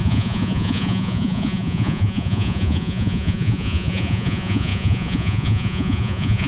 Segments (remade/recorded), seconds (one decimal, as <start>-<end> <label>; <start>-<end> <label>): 0.0-6.5 remade